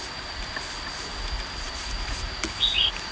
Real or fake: real